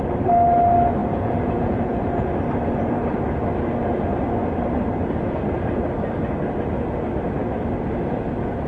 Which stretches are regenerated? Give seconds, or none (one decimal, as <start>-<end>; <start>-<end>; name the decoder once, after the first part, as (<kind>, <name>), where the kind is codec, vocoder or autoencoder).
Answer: 1.0-2.3 (vocoder, Vocos)